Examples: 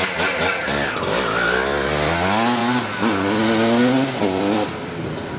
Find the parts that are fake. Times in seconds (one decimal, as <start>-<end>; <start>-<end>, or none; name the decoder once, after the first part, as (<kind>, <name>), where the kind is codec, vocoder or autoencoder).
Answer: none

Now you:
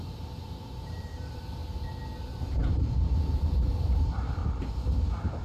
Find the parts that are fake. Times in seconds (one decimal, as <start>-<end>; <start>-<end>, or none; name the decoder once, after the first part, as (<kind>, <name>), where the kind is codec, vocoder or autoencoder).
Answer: 0.0-1.6 (vocoder, BigVGAN v2); 2.2-4.4

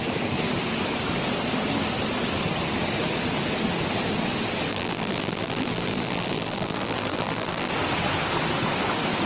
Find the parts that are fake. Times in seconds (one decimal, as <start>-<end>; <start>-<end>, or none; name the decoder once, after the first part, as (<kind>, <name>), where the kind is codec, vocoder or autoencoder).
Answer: 4.7-7.7 (vocoder, BigVGAN v2)

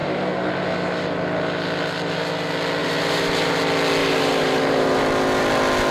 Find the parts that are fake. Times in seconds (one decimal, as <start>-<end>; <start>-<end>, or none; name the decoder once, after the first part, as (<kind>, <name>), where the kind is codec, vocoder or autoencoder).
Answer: 2.8-3.6 (vocoder, BigVGAN v2); 4.0-5.0